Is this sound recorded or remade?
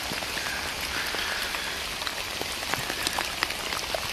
remade